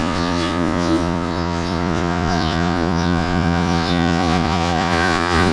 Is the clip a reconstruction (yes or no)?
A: yes